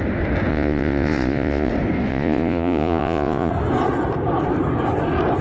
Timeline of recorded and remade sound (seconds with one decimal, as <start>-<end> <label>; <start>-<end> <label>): 0.0-0.5 recorded; 0.5-1.7 remade; 1.7-2.1 recorded; 2.1-3.5 remade; 3.5-5.4 recorded